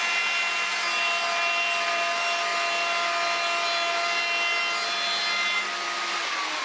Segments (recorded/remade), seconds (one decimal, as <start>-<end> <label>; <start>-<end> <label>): 0.0-6.6 recorded